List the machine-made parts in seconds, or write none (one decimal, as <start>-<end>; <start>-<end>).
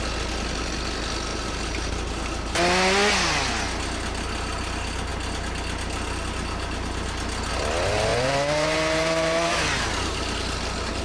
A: 1.3-1.9; 8.1-11.0